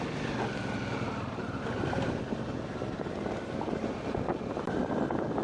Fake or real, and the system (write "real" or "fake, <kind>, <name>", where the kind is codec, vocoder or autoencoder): real